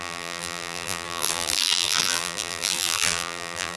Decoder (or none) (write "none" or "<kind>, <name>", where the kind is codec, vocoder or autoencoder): vocoder, BigVGAN v2